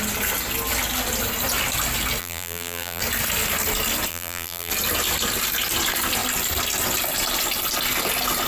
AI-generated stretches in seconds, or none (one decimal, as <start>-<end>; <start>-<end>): 2.2-3.0; 4.1-4.7